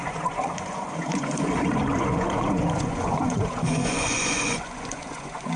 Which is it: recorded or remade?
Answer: remade